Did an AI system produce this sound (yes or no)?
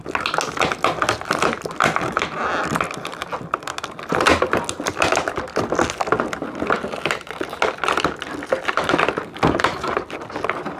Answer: no